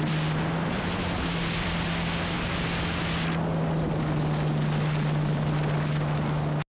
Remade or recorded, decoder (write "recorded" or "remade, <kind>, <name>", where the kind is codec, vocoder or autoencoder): recorded